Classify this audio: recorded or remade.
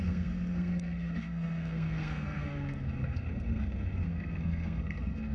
remade